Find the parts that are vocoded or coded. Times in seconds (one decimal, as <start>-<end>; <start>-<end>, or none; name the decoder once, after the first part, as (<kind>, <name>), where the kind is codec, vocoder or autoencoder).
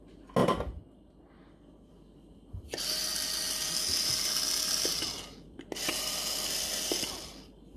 none